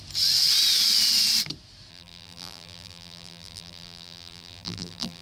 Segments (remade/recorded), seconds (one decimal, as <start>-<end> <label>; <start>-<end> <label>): 0.0-1.9 recorded; 1.9-5.2 remade